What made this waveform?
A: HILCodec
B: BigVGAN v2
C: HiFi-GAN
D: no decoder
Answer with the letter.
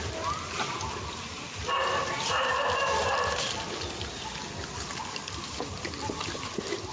D